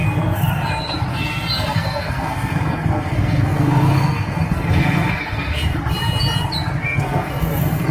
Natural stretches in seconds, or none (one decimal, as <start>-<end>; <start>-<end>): 0.7-1.1; 5.8-6.8